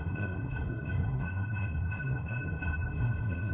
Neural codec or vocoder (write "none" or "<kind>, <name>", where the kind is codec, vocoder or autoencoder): codec, SNAC